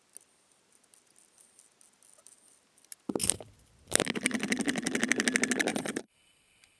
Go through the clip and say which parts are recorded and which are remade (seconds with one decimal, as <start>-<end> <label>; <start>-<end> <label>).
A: 0.0-5.7 recorded; 5.7-6.8 remade